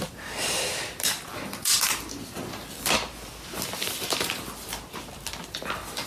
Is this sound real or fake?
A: real